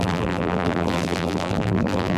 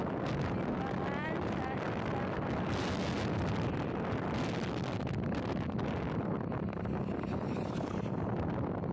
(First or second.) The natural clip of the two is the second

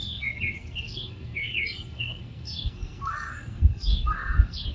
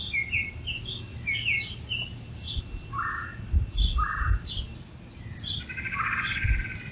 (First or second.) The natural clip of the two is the second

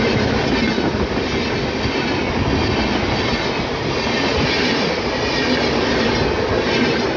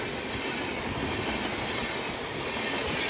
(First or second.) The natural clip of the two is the first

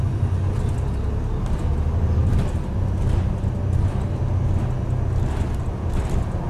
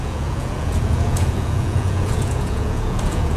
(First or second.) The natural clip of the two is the first